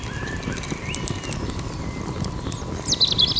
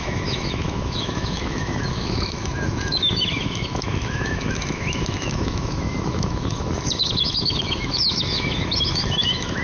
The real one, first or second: first